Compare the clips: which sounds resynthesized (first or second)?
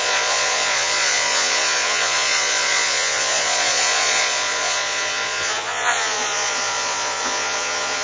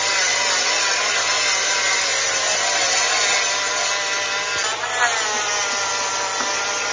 first